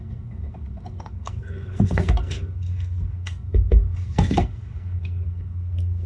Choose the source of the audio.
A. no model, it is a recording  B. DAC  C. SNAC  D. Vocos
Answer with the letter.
C